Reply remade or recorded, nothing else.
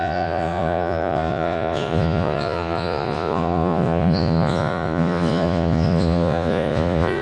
remade